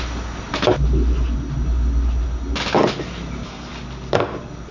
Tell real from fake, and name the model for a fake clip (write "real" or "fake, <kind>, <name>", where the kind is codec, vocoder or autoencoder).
real